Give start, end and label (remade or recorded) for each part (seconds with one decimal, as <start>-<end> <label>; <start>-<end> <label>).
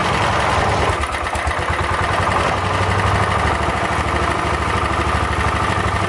0.0-6.1 recorded